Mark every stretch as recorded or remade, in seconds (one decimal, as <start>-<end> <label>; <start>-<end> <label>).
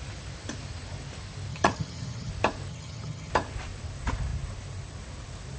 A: 0.0-1.5 recorded; 1.5-2.3 remade; 2.3-2.7 recorded; 2.7-3.3 remade; 3.3-5.6 recorded